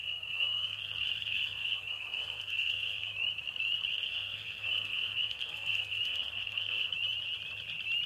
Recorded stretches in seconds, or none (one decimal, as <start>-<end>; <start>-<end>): 3.1-3.9; 6.9-8.1